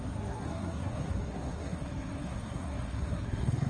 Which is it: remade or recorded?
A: remade